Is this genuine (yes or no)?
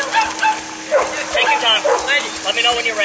yes